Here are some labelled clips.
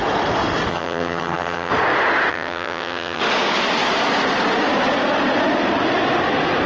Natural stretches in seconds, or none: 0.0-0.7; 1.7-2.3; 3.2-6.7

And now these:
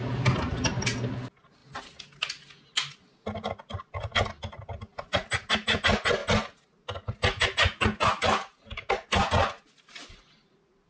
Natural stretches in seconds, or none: 0.0-10.9